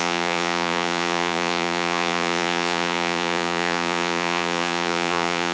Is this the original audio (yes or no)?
no